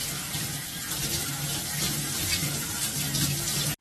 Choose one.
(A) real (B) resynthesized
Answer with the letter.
A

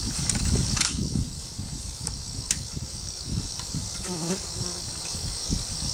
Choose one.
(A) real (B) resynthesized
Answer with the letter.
B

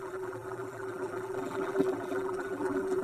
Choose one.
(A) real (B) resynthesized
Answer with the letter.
B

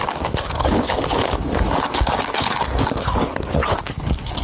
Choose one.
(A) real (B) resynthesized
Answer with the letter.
B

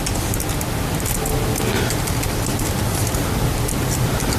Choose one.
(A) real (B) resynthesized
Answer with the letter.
A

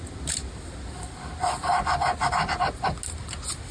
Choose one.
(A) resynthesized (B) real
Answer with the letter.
B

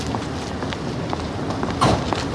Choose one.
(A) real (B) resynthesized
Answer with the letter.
A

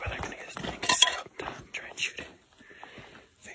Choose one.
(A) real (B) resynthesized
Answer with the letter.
A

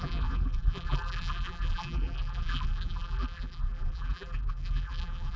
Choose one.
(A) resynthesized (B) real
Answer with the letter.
A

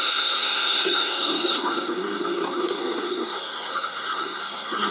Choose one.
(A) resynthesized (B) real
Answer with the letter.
A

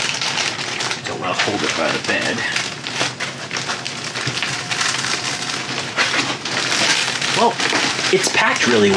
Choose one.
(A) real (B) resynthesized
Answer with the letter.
A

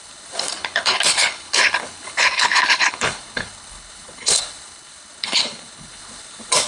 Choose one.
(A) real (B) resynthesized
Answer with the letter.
B